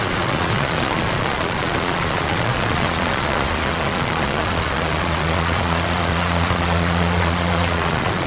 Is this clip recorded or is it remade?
remade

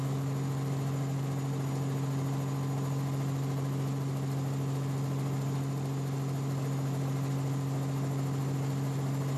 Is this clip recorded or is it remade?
recorded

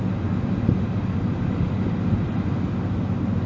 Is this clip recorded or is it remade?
recorded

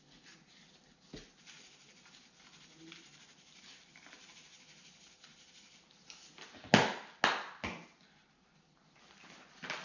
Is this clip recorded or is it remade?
recorded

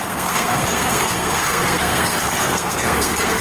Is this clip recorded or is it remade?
remade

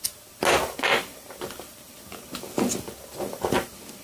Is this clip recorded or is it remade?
recorded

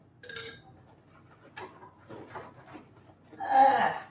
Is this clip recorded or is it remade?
recorded